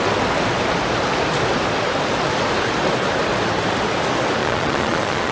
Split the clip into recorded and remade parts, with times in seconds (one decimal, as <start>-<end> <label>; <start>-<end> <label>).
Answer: 0.0-4.4 recorded; 4.4-5.3 remade

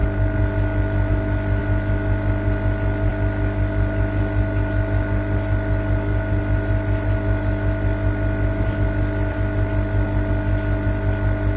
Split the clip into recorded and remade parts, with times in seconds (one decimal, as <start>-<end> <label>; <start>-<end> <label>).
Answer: 0.0-11.6 recorded

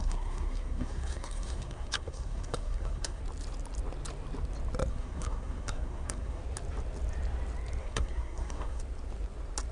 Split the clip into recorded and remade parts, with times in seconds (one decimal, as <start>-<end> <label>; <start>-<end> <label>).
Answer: 0.0-3.2 remade; 3.2-4.9 recorded; 4.9-6.4 remade; 6.4-7.8 recorded; 7.8-8.8 remade; 8.8-9.7 recorded

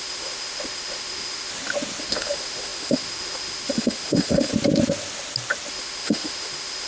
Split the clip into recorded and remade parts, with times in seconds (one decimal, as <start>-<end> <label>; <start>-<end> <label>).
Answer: 0.0-1.5 remade; 1.5-2.0 recorded; 2.0-4.5 remade; 4.5-5.7 recorded; 5.7-6.9 remade